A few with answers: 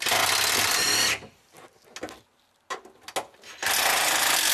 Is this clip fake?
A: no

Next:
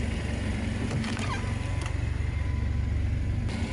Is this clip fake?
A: no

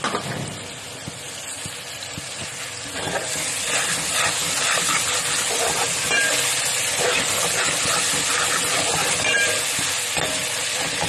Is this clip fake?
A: no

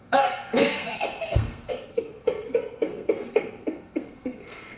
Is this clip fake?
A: yes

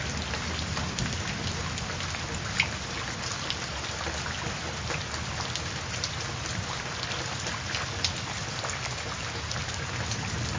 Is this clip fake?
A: no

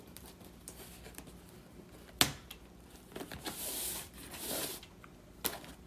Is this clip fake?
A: no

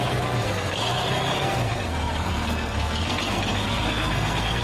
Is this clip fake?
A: yes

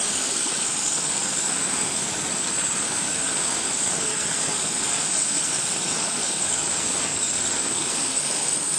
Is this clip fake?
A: yes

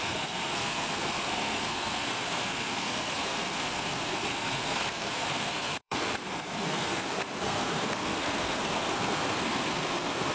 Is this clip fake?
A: yes